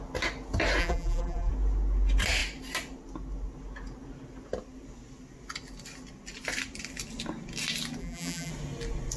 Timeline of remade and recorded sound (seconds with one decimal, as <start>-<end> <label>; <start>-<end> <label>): 0.0-0.8 recorded; 0.8-1.5 remade; 1.5-8.0 recorded; 8.0-8.5 remade; 8.5-9.2 recorded

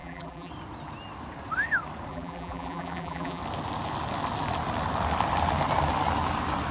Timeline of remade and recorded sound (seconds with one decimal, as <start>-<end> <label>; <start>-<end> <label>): 0.0-0.5 remade; 0.5-2.1 recorded; 2.1-3.4 remade; 3.4-6.7 recorded

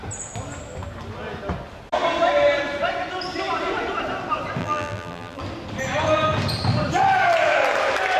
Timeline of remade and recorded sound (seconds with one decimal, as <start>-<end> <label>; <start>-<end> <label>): 0.0-4.6 recorded; 4.6-5.4 remade; 5.4-8.2 recorded

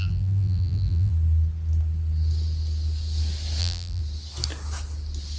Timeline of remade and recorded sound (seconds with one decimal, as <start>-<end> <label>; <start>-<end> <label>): 0.0-1.1 remade; 1.1-3.6 recorded; 3.6-4.0 remade; 4.0-5.4 recorded

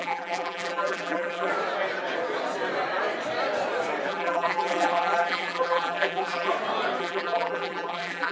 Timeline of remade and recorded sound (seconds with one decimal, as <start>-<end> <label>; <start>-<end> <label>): 0.0-1.5 remade; 1.5-4.1 recorded; 4.1-6.5 remade; 6.5-7.0 recorded; 7.0-8.3 remade